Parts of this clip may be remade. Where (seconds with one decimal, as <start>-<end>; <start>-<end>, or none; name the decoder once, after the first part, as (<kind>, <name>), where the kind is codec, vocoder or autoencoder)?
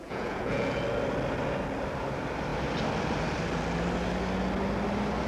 0.0-0.8 (vocoder, Vocos)